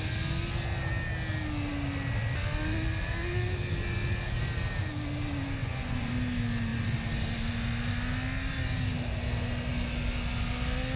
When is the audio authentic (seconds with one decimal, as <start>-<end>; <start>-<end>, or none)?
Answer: 0.0-5.6; 6.1-11.0